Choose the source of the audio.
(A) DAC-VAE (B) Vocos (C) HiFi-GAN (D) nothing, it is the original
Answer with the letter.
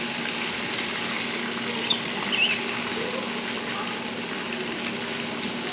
D